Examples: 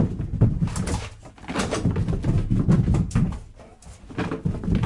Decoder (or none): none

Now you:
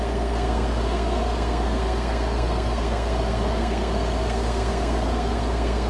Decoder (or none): codec, SNAC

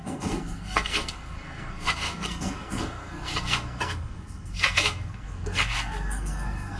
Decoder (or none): codec, SNAC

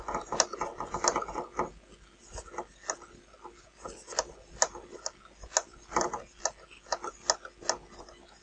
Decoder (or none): none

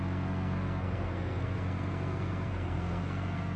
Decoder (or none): codec, SNAC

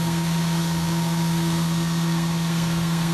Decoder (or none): codec, SNAC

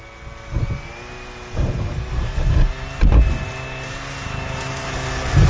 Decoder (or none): none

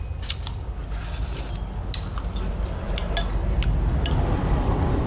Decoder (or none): none